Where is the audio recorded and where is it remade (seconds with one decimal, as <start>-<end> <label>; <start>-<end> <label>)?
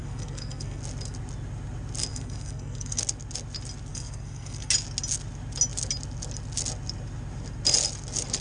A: 0.0-0.8 remade; 0.8-2.1 recorded; 2.1-3.0 remade; 3.0-3.9 recorded; 3.9-4.7 remade; 4.7-8.4 recorded